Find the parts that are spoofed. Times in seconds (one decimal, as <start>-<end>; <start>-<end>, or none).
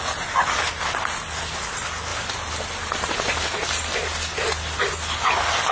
none